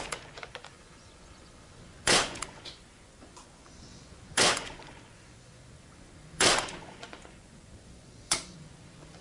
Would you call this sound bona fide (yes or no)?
no